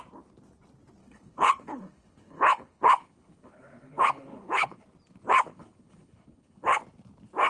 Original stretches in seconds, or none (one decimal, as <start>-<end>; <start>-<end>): 0.0-1.0; 4.8-5.5; 6.8-7.5